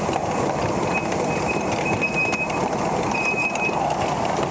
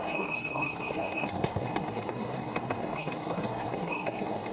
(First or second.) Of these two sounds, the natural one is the first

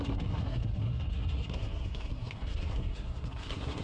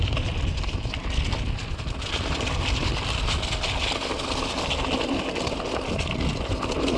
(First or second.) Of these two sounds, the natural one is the second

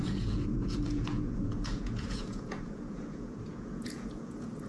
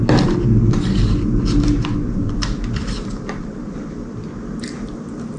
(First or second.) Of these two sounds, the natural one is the second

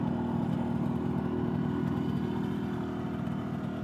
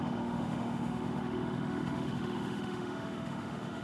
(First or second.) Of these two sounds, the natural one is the first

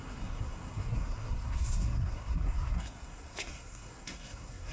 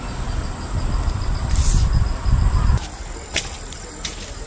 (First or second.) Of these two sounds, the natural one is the second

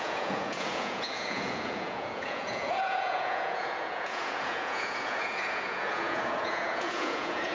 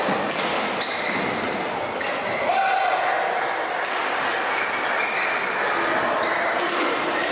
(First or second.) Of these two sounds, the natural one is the second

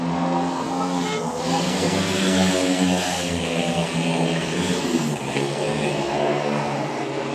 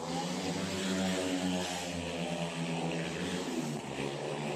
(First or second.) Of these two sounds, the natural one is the second